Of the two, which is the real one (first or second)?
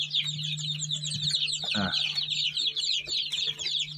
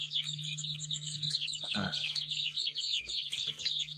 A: first